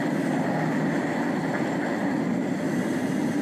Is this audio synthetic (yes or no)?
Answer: no